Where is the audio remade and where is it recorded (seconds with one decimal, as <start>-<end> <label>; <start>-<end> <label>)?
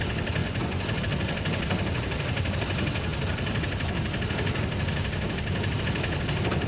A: 0.0-0.4 recorded; 0.4-1.0 remade; 1.0-6.7 recorded